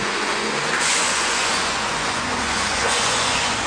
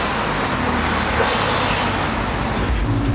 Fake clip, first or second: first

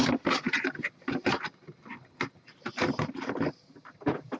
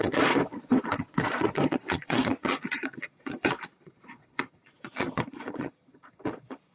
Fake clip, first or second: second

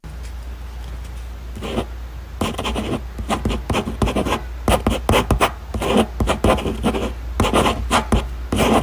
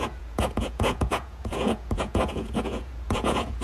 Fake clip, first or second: second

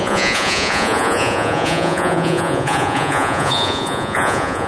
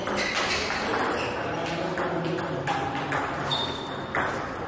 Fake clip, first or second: first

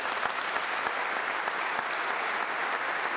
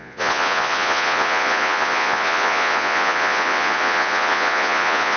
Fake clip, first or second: second